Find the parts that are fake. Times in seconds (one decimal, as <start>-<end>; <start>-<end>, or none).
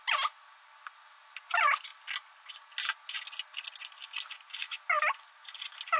none